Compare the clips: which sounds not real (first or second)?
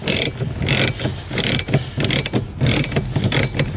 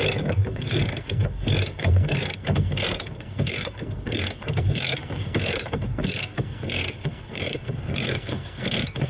second